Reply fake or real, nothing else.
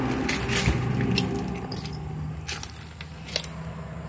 real